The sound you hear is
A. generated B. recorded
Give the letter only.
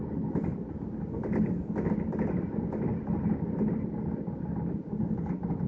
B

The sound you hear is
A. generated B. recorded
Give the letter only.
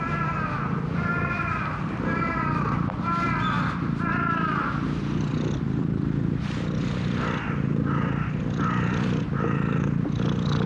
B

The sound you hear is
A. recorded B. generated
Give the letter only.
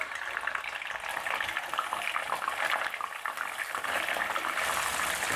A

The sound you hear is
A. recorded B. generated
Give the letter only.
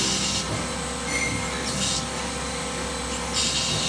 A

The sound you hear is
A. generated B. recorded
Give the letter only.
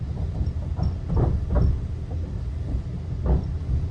B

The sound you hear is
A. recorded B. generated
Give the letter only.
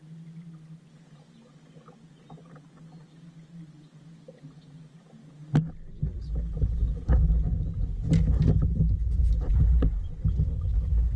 A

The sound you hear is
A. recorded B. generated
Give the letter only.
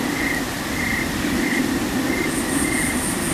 A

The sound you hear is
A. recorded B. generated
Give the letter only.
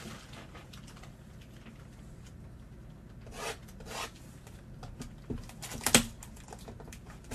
A